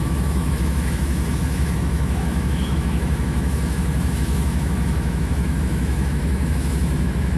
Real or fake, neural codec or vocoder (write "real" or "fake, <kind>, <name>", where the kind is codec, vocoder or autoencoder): fake, autoencoder, DAC-VAE